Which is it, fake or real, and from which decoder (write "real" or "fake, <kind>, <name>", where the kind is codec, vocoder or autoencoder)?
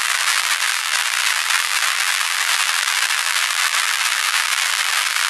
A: fake, vocoder, BigVGAN v2